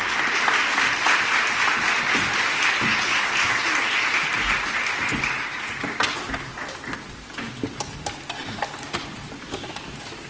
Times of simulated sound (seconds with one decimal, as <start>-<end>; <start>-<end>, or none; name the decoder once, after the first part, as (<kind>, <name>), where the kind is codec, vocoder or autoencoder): 0.0-2.9 (vocoder, BigVGAN v2); 4.2-6.5; 7.1-10.3